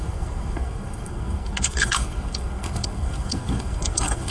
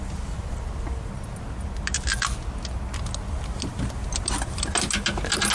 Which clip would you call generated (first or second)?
first